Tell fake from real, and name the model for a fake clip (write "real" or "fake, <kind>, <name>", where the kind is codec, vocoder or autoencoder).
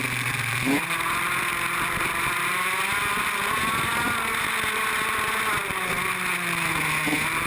real